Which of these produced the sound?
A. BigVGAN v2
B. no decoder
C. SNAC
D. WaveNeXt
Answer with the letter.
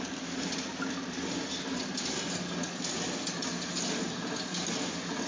B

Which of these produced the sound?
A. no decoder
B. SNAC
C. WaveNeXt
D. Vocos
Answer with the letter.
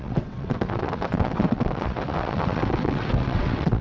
C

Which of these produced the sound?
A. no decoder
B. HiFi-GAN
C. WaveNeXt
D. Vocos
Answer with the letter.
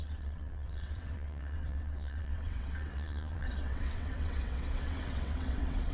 C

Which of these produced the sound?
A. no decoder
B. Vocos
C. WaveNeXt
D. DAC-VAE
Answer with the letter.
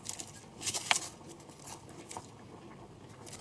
A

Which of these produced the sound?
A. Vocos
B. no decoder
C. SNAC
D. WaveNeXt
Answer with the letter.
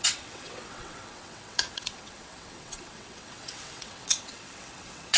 D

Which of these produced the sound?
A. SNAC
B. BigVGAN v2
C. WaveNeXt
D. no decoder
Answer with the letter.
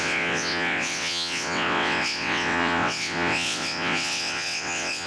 C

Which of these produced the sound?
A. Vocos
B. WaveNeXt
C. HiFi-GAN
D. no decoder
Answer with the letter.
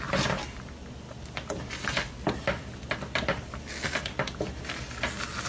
D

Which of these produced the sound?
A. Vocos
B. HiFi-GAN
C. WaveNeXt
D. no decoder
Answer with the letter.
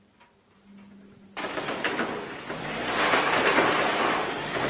D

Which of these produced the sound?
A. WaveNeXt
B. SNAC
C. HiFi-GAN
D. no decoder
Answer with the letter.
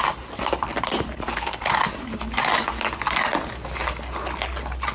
D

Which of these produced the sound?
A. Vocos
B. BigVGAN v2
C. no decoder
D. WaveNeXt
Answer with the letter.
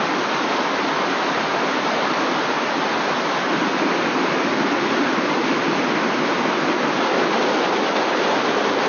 C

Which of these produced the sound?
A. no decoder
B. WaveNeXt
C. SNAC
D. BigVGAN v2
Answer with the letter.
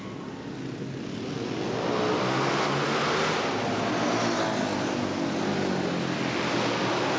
A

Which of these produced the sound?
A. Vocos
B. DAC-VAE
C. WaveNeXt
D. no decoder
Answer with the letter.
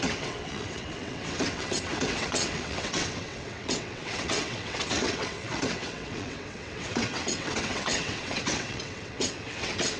C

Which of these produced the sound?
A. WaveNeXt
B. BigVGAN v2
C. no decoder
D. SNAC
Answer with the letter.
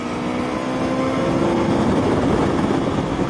C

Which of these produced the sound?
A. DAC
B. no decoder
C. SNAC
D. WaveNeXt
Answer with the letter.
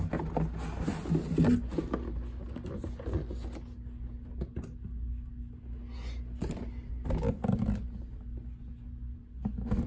B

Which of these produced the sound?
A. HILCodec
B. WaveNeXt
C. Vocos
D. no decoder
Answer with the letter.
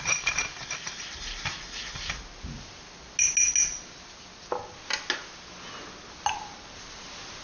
D